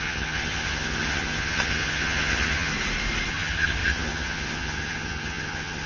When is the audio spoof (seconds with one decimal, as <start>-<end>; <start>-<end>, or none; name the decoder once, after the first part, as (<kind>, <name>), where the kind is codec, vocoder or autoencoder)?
0.0-2.7 (vocoder, HiFi-GAN); 3.3-5.9